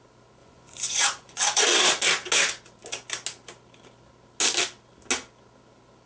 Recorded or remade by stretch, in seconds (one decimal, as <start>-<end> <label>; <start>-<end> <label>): 0.0-0.4 recorded; 0.4-1.6 remade; 1.6-6.1 recorded